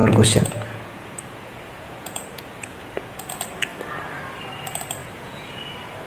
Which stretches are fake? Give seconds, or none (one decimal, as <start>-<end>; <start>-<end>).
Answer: 0.0-3.3; 5.0-5.6